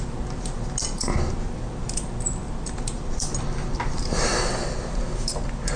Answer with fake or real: fake